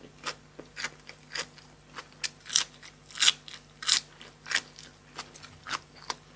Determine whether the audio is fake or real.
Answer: real